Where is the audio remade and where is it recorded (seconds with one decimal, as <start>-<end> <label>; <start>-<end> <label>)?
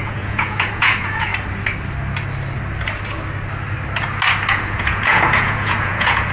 0.0-1.3 remade; 1.3-4.5 recorded; 4.5-6.3 remade